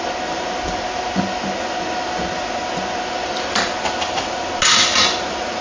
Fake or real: real